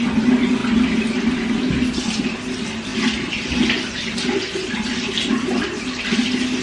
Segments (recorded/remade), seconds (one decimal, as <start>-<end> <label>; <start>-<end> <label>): 0.0-6.6 recorded